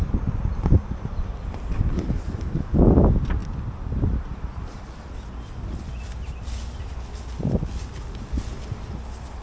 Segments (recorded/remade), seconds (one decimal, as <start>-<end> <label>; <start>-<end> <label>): 0.0-9.4 recorded